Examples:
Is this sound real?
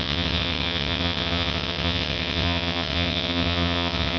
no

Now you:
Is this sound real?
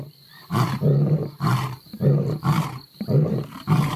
no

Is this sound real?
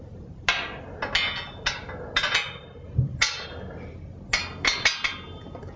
yes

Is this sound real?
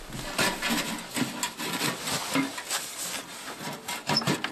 yes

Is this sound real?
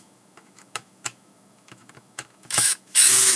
no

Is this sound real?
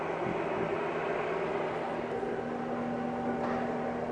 yes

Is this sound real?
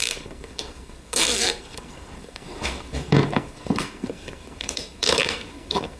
no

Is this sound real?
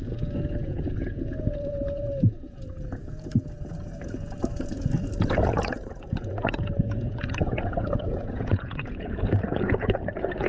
no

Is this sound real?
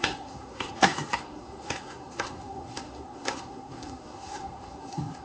no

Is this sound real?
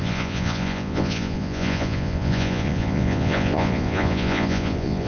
no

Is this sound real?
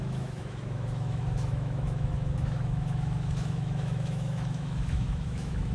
no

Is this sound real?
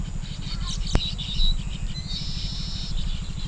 yes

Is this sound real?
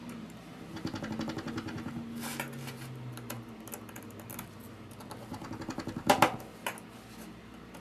yes